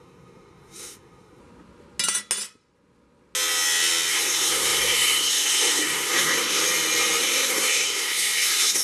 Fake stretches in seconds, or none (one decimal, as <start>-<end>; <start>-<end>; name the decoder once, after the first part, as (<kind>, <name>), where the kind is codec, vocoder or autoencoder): 0.0-1.4 (codec, SNAC); 4.1-6.6; 7.2-8.8